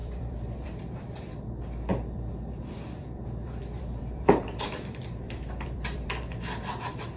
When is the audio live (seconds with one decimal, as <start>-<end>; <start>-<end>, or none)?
1.3-1.9; 6.2-7.2